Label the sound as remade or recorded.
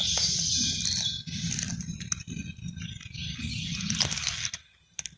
recorded